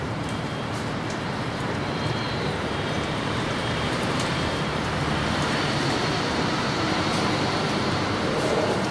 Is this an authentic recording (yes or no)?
no